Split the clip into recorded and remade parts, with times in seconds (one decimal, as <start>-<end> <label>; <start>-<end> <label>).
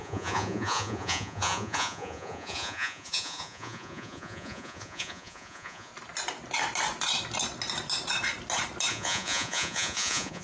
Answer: 0.0-5.9 remade; 5.9-8.9 recorded; 8.9-10.4 remade